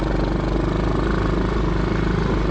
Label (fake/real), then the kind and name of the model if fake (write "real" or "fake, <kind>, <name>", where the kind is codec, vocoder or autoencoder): real